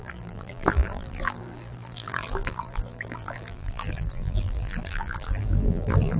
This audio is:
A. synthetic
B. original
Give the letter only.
A